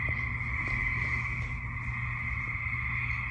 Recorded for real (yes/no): yes